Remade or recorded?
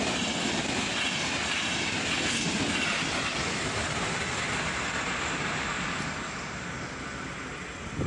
recorded